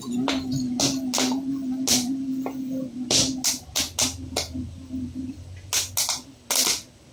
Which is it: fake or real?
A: real